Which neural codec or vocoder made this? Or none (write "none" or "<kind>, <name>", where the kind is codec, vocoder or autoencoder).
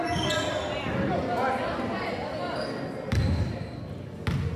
none